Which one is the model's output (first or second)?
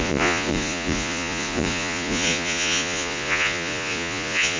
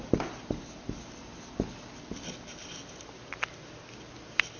first